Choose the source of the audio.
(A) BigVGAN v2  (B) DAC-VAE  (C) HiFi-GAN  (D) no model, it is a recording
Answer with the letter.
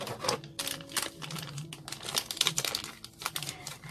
A